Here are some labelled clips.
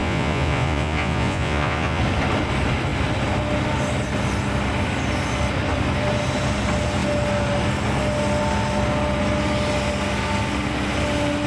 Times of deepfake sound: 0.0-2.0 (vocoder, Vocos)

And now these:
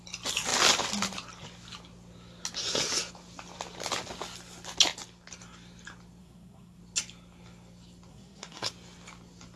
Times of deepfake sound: 6.2-6.8 (codec, SNAC); 8.1-8.7

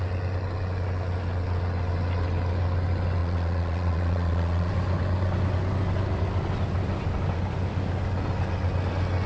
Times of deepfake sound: 3.2-4.7 (vocoder, Vocos)

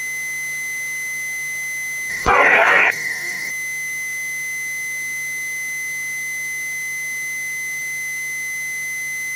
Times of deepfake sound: 2.1-3.5 (codec, DAC)

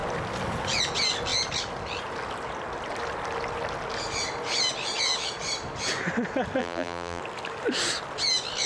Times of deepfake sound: 6.6-7.2 (vocoder, BigVGAN v2)